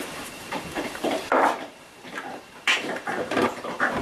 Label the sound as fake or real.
fake